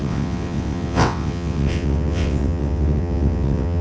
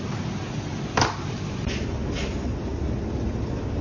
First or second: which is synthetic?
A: first